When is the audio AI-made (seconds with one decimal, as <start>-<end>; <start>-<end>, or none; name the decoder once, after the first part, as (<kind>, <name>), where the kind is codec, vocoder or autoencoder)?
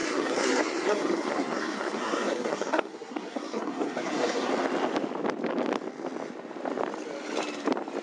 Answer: 0.0-4.5 (codec, SNAC)